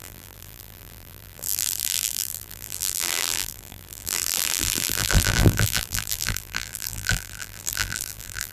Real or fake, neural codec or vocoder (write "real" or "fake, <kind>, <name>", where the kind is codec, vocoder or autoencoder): fake, vocoder, BigVGAN v2